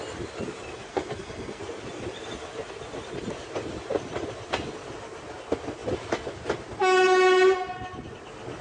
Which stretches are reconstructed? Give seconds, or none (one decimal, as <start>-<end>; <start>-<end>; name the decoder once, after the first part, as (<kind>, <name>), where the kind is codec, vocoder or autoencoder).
0.9-1.6 (codec, SNAC)